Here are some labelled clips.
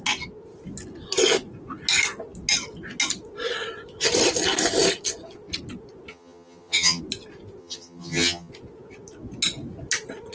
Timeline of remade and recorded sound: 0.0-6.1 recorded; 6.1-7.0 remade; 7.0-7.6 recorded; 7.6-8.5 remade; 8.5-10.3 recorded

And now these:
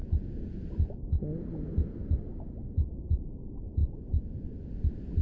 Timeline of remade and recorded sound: 0.0-5.2 recorded